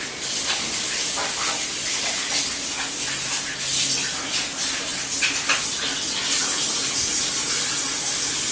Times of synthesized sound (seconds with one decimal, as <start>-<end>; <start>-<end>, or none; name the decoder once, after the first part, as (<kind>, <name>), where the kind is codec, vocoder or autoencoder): none